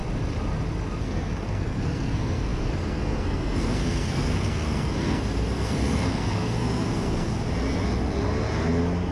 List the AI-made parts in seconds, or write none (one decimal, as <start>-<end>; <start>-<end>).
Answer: 1.0-7.3